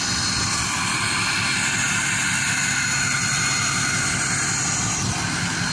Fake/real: real